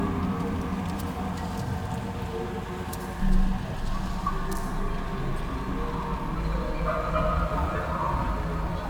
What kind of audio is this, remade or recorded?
recorded